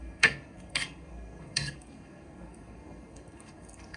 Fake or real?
fake